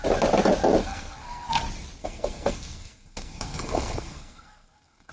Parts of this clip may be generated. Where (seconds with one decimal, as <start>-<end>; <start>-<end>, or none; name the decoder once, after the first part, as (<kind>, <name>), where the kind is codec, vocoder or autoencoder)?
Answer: 0.8-1.6 (codec, SNAC); 2.0-5.1